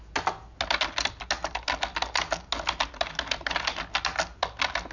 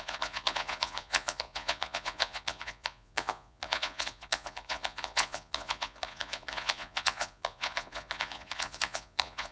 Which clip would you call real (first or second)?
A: first